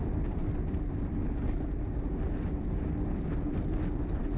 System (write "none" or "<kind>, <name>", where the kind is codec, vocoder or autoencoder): none